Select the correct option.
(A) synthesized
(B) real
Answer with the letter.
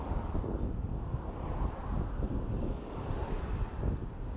B